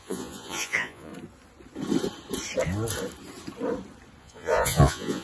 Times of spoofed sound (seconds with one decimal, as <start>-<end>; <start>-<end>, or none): 0.0-1.1; 4.2-5.2